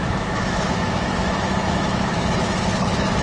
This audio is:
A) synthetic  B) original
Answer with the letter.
A